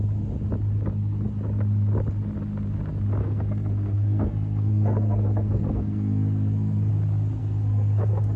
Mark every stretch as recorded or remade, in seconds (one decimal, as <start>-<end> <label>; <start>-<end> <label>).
0.0-3.2 recorded; 3.2-6.9 remade; 6.9-7.4 recorded; 7.4-8.4 remade